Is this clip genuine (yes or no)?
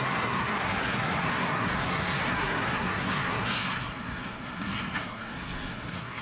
no